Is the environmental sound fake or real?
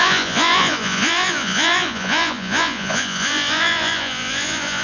fake